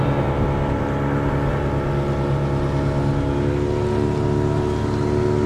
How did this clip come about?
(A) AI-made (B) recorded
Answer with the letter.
B